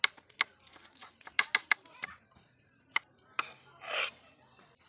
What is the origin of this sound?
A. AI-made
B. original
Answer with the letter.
B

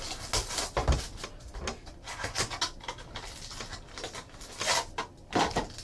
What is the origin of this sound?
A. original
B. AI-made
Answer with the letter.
A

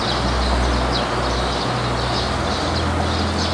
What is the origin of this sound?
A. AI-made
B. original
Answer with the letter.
B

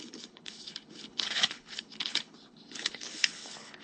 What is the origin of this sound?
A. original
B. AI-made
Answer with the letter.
B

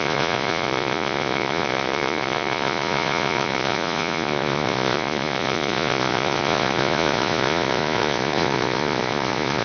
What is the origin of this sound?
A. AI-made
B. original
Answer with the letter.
A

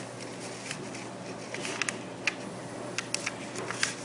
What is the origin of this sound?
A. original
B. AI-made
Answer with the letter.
A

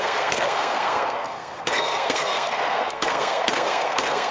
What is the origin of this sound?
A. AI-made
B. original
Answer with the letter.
A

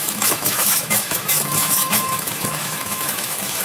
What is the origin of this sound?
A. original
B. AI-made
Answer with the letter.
B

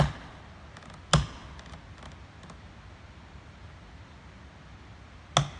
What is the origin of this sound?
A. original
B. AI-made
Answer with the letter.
A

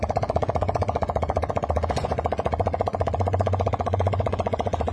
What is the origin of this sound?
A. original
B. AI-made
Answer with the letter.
B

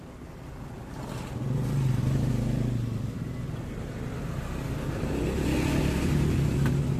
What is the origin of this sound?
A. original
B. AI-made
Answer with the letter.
A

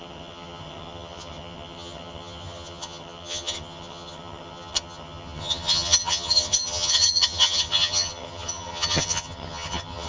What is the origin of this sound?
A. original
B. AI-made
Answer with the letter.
B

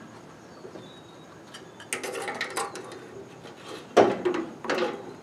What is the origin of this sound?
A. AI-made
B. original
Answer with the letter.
B